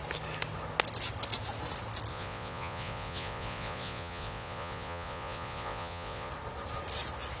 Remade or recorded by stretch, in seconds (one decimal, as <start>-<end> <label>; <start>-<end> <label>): 0.0-2.1 recorded; 2.1-6.3 remade; 6.3-7.4 recorded